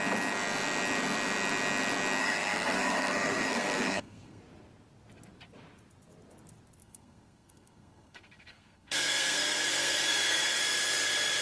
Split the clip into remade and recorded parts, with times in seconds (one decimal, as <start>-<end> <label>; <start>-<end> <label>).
0.0-2.2 recorded; 2.2-4.4 remade; 4.4-6.8 recorded; 6.8-10.6 remade; 10.6-11.4 recorded